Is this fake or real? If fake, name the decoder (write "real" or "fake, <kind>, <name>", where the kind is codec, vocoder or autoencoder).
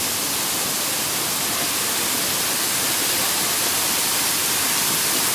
real